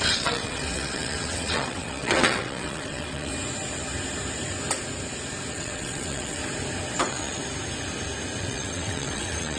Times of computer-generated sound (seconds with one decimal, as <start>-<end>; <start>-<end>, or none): 0.0-3.3; 5.5-6.4; 7.0-7.4; 8.4-9.6